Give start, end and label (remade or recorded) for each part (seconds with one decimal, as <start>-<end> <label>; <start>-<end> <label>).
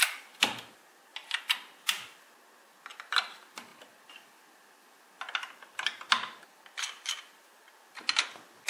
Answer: 0.0-8.7 recorded